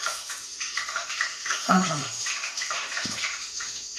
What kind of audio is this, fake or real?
fake